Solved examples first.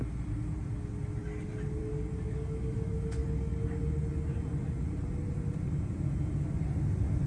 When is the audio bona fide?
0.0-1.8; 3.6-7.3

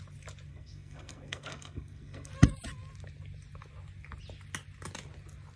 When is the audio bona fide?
0.0-0.5; 2.3-5.6

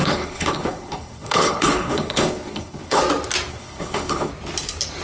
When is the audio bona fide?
3.0-3.5; 4.3-5.0